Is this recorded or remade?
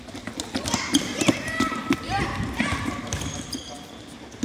recorded